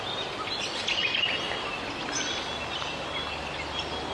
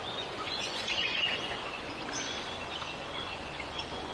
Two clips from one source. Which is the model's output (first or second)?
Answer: second